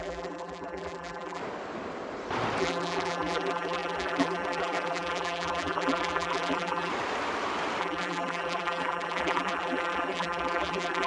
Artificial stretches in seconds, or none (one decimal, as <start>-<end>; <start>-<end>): 0.0-1.4; 2.6-6.9; 7.8-11.1